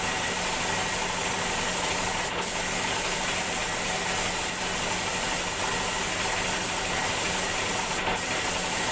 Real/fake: real